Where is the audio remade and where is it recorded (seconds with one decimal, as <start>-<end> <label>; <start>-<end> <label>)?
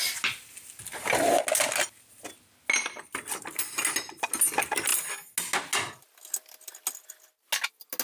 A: 0.0-8.0 recorded